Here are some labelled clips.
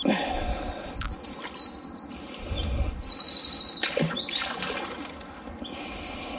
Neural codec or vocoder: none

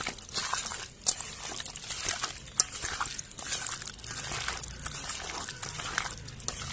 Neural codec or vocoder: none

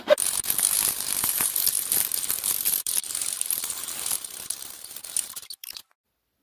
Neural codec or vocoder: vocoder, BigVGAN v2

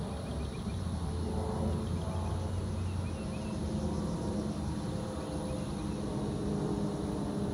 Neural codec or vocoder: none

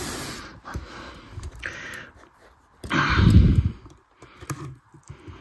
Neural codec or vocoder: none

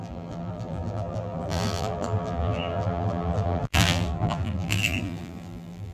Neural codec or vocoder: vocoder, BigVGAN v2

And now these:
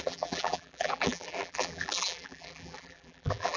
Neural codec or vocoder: vocoder, BigVGAN v2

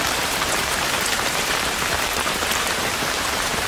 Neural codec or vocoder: vocoder, BigVGAN v2